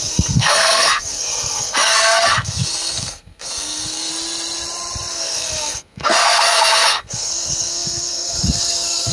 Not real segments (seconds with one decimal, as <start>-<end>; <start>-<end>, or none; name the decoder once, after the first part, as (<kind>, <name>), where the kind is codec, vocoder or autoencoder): 0.0-4.1 (codec, SNAC); 5.1-9.1